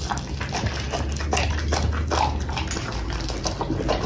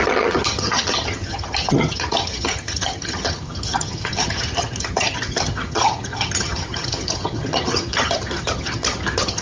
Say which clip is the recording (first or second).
first